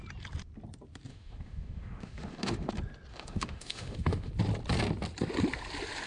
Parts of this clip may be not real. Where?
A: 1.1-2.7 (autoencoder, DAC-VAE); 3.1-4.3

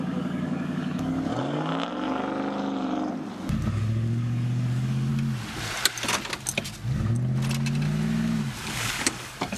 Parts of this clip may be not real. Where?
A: 0.0-1.7 (codec, DAC); 3.7-5.1; 8.6-9.6

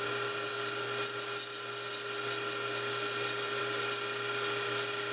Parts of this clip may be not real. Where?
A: none

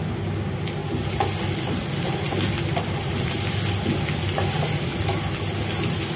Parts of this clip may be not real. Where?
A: none